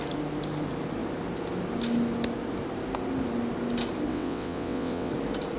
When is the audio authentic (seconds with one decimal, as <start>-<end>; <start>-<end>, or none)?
0.0-4.1; 5.1-5.6